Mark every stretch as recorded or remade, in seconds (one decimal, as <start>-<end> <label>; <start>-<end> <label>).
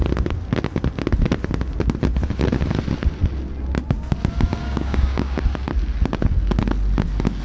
0.0-4.6 recorded; 4.6-5.4 remade; 5.4-7.4 recorded